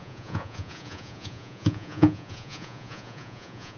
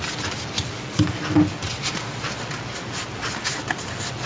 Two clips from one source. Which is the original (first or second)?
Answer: second